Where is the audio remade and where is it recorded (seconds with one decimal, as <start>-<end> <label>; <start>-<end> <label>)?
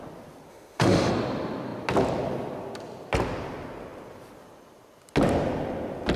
0.0-0.5 recorded; 0.5-1.1 remade; 1.1-6.2 recorded